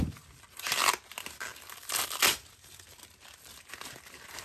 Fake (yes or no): no